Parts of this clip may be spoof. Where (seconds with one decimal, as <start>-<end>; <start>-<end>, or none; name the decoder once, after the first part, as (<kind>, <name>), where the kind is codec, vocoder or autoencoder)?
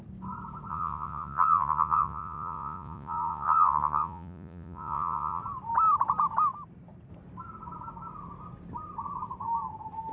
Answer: 0.7-5.4 (vocoder, Vocos)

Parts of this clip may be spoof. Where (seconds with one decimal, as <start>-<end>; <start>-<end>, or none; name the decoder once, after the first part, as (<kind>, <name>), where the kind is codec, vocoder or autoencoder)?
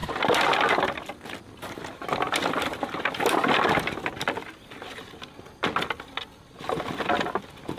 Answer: none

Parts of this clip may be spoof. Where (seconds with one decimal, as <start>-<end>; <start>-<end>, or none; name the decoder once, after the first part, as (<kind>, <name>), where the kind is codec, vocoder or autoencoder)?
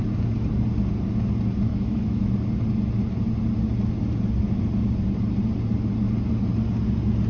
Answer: 1.7-2.3 (autoencoder, DAC-VAE)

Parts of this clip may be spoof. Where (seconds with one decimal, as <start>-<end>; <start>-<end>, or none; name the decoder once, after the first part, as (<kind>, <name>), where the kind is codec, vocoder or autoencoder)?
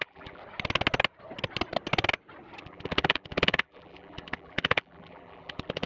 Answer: 0.0-0.4 (vocoder, BigVGAN v2); 2.6-5.9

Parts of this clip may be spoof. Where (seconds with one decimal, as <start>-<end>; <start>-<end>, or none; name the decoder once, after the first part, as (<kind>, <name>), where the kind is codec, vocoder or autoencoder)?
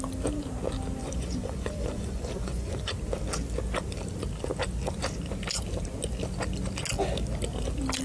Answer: 1.0-2.9 (vocoder, Vocos)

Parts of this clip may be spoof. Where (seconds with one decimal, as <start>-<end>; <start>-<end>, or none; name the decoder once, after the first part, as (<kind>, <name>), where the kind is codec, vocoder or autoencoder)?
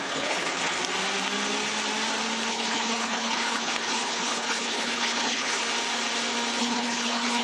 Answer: 0.0-0.8 (codec, HILCodec); 2.5-5.6; 6.6-7.4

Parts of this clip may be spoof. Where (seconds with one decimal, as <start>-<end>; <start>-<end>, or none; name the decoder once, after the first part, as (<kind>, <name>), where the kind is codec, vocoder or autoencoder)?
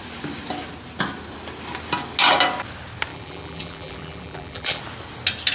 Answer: 3.1-4.8 (vocoder, BigVGAN v2)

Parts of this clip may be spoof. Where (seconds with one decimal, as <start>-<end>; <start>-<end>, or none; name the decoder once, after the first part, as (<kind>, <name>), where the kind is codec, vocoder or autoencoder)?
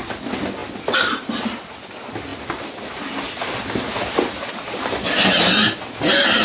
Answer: 0.6-1.6 (vocoder, BigVGAN v2); 2.3-5.1